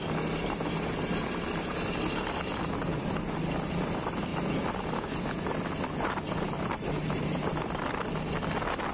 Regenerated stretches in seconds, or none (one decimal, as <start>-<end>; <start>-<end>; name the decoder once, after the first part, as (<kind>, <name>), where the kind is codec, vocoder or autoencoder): 2.9-3.9 (vocoder, BigVGAN v2); 4.3-4.9